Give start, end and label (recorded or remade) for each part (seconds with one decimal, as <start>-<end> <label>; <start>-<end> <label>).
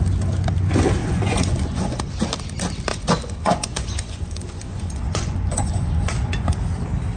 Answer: 0.0-1.0 recorded; 1.0-2.1 remade; 2.1-2.9 recorded; 2.9-6.6 remade; 6.6-7.2 recorded